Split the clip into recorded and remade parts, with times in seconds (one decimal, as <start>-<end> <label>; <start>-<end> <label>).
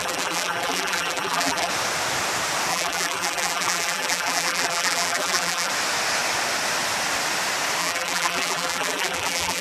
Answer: 0.0-1.7 remade; 1.7-2.7 recorded; 2.7-5.7 remade; 5.7-7.8 recorded; 7.8-9.6 remade